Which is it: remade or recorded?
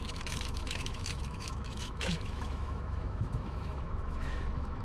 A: remade